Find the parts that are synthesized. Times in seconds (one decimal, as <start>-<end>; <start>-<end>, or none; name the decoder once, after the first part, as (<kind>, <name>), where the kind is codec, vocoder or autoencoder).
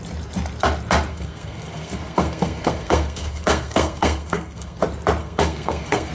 1.1-4.8 (codec, SNAC); 5.2-6.1